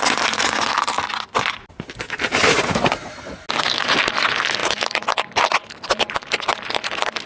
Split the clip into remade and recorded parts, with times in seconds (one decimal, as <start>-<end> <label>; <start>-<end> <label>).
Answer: 0.0-7.3 recorded